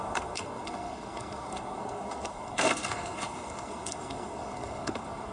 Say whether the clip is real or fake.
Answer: fake